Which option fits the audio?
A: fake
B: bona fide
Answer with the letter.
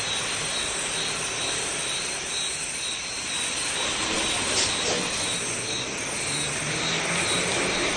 B